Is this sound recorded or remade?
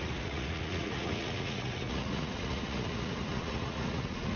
remade